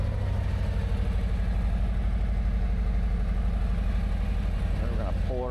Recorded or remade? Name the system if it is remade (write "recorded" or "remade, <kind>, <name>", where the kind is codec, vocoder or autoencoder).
recorded